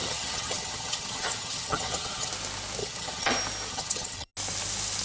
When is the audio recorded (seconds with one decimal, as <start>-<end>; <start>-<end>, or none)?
2.3-2.8; 3.3-3.7; 4.3-5.0